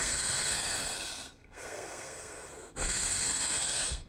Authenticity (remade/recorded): remade